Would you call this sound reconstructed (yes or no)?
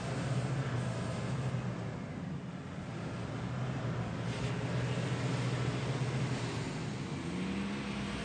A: no